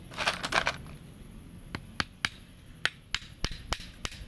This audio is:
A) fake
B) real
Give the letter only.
B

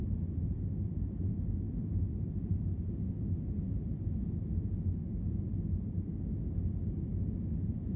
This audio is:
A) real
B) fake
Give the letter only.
A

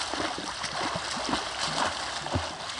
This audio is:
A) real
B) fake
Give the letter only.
A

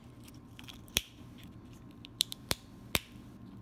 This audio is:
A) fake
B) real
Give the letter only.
A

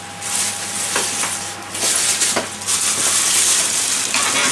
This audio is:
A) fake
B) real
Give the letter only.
B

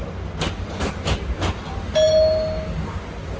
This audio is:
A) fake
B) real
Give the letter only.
B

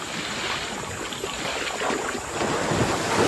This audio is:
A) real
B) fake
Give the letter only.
A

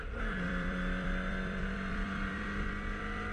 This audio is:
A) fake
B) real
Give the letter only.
A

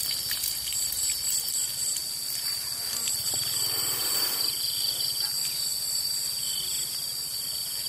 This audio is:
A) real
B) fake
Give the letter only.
B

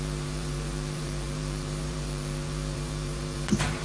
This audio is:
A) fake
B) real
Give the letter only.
A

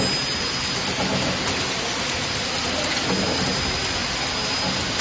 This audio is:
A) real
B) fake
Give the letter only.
A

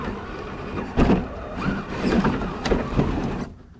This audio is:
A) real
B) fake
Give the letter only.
A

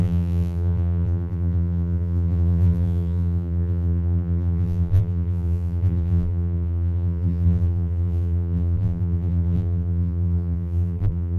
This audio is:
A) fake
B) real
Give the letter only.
A